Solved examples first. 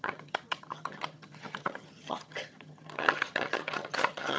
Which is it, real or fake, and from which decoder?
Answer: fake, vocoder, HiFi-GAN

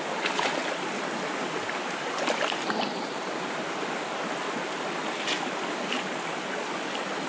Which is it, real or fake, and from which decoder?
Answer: real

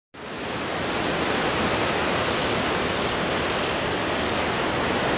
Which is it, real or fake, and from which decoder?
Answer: real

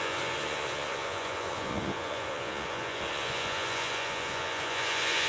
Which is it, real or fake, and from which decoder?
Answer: fake, vocoder, Vocos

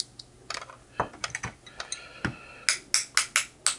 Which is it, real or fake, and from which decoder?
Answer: real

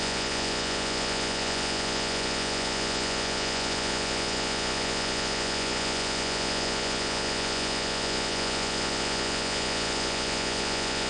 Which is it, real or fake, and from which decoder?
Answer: fake, vocoder, Vocos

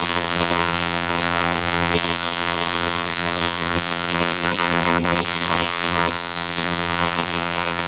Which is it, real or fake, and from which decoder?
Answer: fake, vocoder, BigVGAN v2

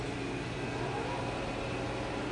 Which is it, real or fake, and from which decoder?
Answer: real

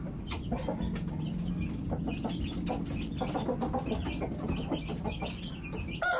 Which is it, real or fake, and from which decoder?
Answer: real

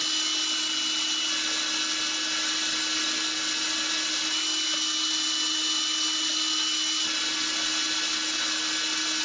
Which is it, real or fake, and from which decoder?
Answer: real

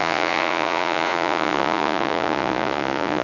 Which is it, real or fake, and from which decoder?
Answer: fake, vocoder, Vocos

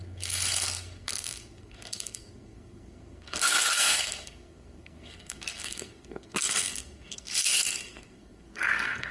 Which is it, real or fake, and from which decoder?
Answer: fake, codec, SNAC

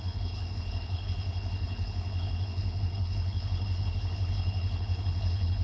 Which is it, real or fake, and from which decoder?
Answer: fake, codec, HILCodec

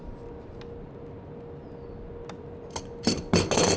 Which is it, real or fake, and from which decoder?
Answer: real